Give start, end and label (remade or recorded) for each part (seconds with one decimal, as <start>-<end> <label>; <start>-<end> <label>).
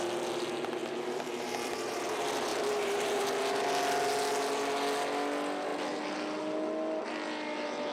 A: 0.0-0.8 recorded; 0.8-1.7 remade; 1.7-2.5 recorded; 2.5-3.2 remade; 3.2-7.9 recorded